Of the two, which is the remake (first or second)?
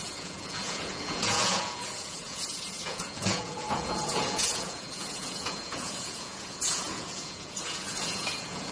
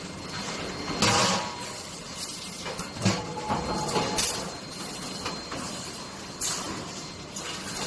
first